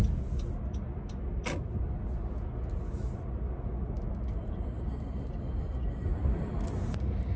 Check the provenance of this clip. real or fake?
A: real